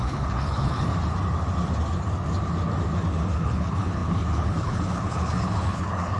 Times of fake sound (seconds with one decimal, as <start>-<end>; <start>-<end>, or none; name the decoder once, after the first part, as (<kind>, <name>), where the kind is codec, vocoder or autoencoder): 0.0-0.9 (codec, HILCodec); 3.3-6.2